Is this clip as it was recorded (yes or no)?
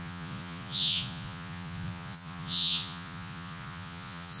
no